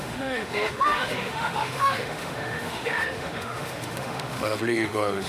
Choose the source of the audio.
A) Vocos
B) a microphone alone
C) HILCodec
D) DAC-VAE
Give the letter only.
D